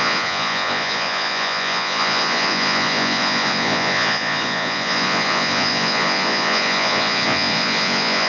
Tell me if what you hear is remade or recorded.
remade